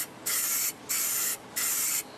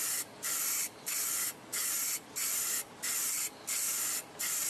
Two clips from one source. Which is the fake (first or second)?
second